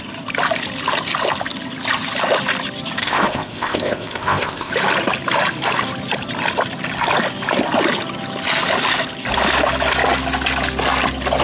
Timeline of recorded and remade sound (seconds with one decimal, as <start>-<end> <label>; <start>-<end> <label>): 0.0-3.0 recorded; 3.0-4.7 remade; 4.7-11.4 recorded